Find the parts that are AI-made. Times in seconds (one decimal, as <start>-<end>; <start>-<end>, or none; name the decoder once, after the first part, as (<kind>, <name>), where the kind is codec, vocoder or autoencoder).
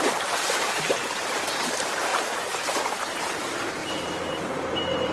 0.0-2.1 (vocoder, BigVGAN v2); 3.2-5.1